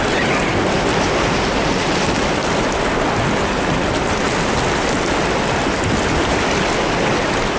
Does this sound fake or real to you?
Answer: real